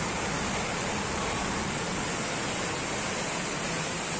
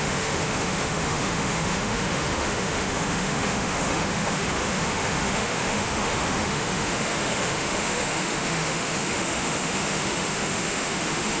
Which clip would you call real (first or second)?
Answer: first